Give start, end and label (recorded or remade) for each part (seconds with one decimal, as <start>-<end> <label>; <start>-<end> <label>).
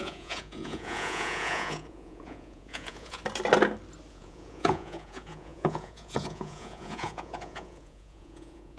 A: 0.0-3.2 remade; 3.2-4.1 recorded; 4.1-8.8 remade